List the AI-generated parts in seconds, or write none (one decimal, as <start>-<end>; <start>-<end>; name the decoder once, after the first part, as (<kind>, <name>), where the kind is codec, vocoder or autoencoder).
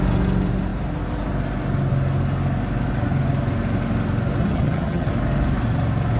4.4-5.1 (vocoder, HiFi-GAN)